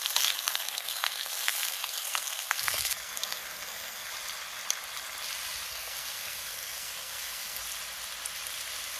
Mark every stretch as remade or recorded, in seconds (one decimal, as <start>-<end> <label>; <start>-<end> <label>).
0.0-4.1 remade; 4.1-5.7 recorded; 5.7-7.6 remade; 7.6-9.0 recorded